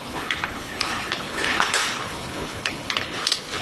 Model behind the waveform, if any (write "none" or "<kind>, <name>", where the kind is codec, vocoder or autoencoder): codec, HILCodec